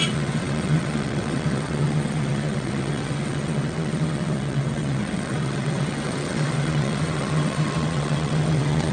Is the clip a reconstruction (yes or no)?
yes